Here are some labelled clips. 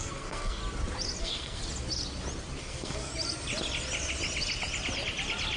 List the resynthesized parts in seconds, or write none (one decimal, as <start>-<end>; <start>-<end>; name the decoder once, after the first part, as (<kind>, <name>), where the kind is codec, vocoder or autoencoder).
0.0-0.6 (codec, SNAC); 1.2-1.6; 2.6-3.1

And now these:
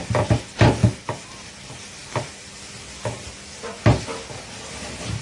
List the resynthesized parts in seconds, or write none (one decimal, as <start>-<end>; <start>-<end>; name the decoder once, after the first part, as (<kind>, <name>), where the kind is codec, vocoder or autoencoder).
0.8-1.3 (vocoder, BigVGAN v2); 2.0-3.6

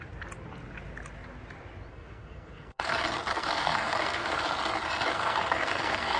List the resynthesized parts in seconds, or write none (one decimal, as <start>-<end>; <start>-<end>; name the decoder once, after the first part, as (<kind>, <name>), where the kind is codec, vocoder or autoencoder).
1.9-2.9 (codec, SNAC); 3.3-4.5; 5.1-6.2

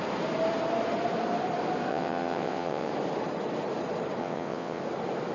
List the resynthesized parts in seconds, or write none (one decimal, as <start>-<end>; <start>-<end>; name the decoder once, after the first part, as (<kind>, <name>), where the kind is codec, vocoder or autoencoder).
1.9-2.9 (vocoder, WaveNeXt); 4.2-4.8

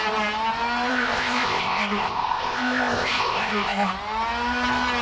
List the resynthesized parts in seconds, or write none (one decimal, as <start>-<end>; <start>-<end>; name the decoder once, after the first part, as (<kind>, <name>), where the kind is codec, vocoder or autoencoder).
0.9-3.9 (codec, ZipCodec)

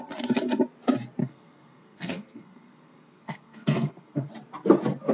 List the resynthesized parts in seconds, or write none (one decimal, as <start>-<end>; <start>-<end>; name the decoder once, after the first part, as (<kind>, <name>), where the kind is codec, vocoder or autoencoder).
1.2-4.3 (codec, SNAC)

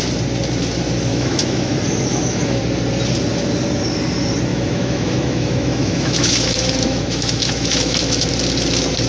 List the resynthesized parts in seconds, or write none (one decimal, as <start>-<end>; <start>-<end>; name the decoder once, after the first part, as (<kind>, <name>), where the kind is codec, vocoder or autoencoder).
1.1-1.7 (autoencoder, DAC-VAE); 2.1-2.6; 4.5-8.3